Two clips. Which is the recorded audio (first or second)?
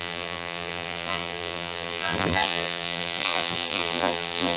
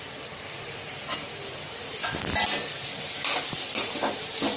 second